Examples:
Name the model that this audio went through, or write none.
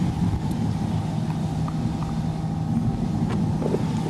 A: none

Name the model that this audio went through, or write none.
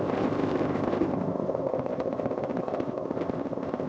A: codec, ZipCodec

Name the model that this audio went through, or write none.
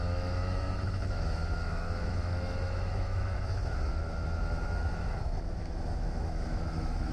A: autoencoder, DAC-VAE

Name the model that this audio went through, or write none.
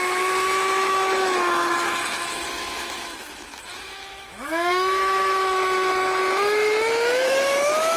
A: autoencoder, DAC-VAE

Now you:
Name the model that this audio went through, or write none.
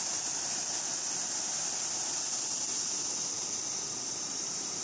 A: none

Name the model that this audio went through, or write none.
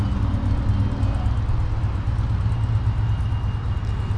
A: none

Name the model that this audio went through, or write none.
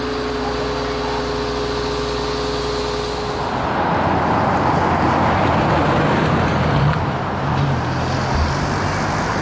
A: none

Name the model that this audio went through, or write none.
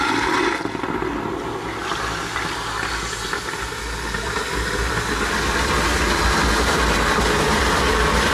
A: none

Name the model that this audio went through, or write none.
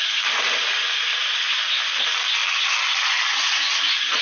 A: none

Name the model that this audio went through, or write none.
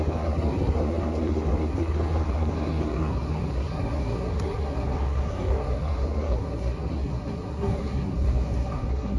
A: codec, SNAC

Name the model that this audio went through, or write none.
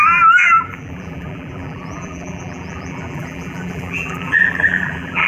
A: vocoder, BigVGAN v2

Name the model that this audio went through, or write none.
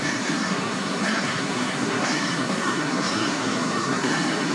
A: codec, SNAC